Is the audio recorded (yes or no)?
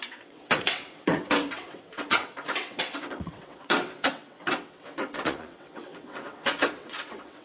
no